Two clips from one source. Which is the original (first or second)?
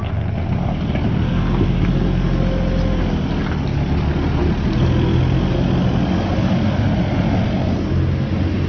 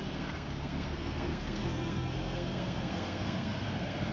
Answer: first